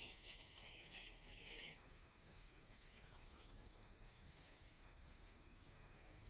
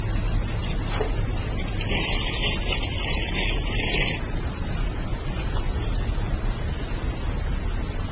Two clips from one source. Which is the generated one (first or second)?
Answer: first